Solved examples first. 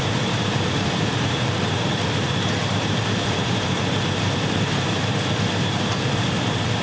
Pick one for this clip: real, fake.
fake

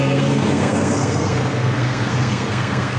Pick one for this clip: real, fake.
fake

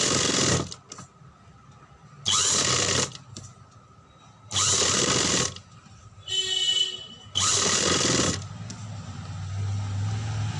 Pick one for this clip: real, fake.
real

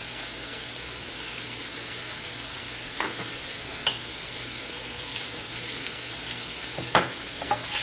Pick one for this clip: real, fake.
fake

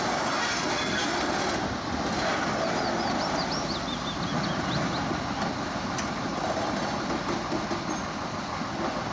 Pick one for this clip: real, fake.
real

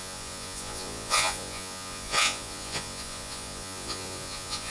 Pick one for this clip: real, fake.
fake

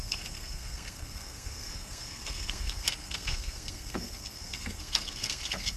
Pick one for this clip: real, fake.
fake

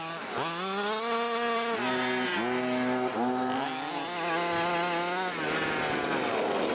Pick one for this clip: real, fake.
real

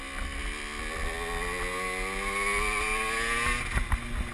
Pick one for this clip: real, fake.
real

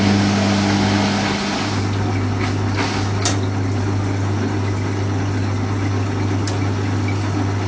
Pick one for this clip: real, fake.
real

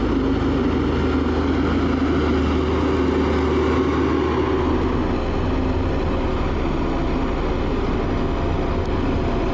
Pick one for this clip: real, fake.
real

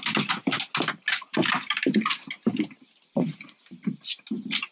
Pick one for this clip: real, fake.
real